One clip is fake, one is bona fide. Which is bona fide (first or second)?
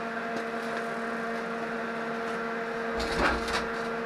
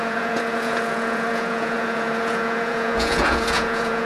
first